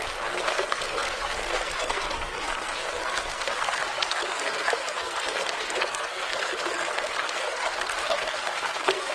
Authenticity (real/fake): fake